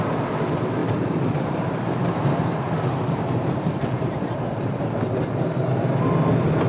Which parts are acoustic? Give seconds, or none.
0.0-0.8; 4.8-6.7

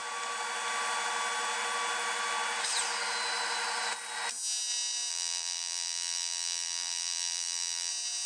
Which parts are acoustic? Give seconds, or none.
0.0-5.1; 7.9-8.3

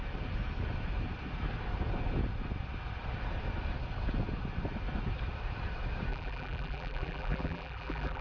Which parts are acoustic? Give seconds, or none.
0.0-6.1

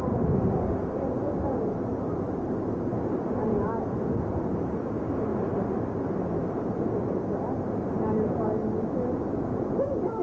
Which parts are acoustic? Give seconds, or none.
0.0-10.2

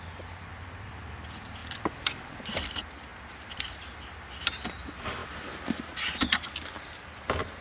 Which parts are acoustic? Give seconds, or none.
0.0-0.5; 1.1-1.6; 2.2-3.1; 3.8-7.6

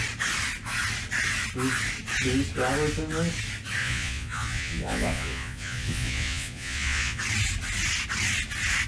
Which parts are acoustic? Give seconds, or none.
0.0-3.8; 7.2-8.9